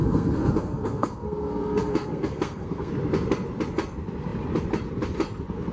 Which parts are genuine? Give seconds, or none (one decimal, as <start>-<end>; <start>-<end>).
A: 2.9-5.7